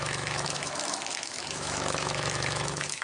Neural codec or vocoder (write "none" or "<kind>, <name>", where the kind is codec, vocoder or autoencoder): autoencoder, DAC-VAE